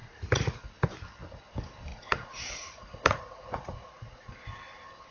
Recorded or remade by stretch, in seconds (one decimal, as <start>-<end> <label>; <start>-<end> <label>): 0.0-0.6 remade; 0.6-1.9 recorded; 1.9-4.3 remade; 4.3-5.1 recorded